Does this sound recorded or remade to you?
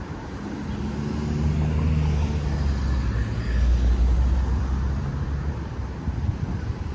recorded